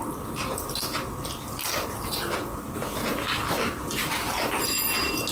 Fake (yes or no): no